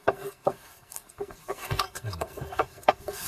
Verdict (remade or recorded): remade